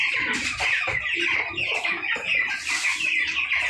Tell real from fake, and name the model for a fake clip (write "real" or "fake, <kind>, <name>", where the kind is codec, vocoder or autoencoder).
real